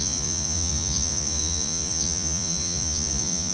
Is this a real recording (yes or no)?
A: no